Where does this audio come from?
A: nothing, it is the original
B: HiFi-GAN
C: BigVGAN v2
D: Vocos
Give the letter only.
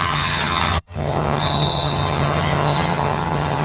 B